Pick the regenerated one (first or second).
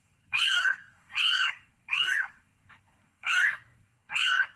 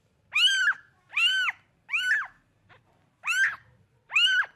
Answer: first